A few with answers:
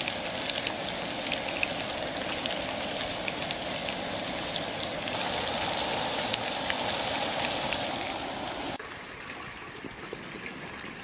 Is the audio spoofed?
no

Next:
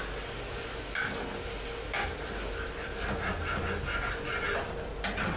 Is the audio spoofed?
no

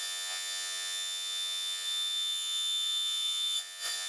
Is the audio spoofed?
yes